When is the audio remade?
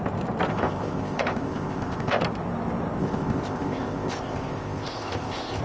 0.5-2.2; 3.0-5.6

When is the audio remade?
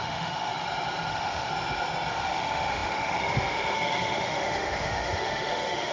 0.0-0.5; 1.1-1.5; 2.1-5.9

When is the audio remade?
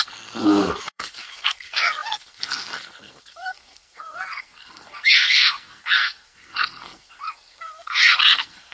0.0-8.7